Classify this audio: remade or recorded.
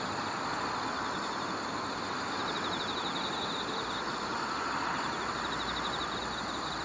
recorded